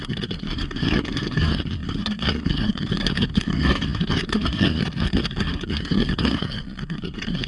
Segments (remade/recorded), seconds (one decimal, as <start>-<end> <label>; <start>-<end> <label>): 0.0-7.5 remade